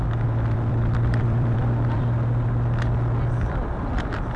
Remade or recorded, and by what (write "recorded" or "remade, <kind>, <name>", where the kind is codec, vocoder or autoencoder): remade, vocoder, BigVGAN v2